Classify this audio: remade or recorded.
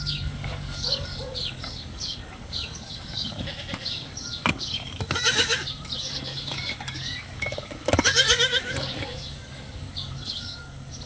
remade